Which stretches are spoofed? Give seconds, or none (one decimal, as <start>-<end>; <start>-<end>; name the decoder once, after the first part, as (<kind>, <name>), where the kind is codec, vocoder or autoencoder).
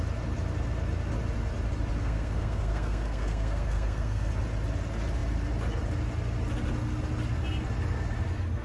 2.0-4.3 (codec, SNAC)